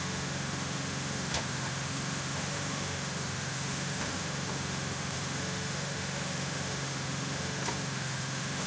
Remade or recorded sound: remade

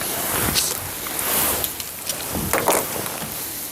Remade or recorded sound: recorded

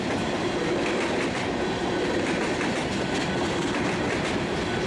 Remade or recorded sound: recorded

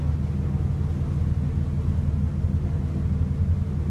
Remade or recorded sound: recorded